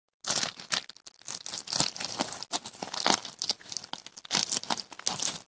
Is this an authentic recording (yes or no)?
yes